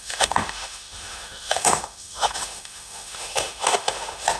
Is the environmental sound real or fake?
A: fake